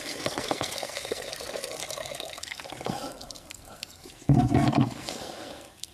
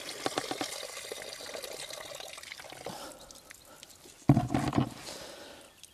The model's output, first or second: first